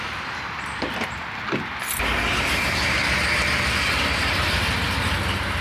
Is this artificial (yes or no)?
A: yes